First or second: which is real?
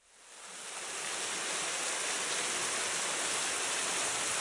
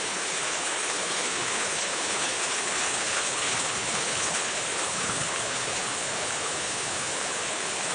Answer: first